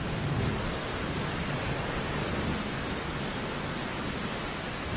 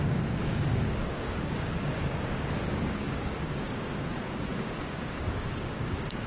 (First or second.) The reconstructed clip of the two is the second